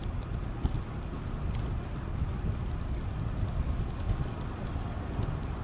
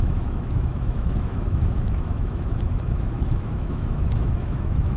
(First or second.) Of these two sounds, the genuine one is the first